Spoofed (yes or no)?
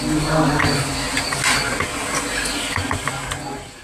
no